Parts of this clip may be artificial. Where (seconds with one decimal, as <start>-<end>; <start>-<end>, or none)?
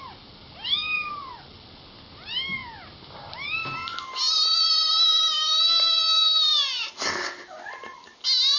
none